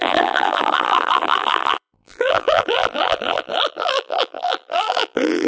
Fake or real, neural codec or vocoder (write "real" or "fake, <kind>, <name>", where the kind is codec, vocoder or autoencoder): fake, vocoder, BigVGAN v2